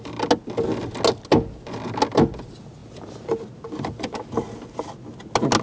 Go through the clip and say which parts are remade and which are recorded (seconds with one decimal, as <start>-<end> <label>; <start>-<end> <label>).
0.0-5.6 recorded